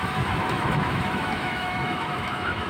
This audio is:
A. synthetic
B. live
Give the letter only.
A